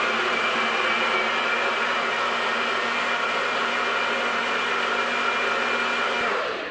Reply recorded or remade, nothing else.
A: recorded